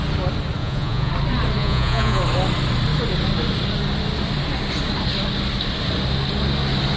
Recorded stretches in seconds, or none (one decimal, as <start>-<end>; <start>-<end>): 0.0-0.6; 1.1-1.6; 2.2-7.0